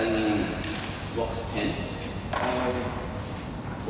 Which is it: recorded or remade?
recorded